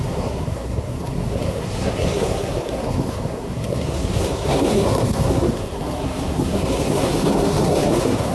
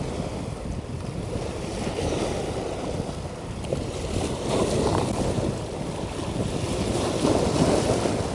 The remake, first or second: first